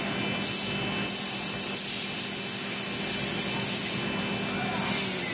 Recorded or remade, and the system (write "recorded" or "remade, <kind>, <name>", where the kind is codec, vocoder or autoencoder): recorded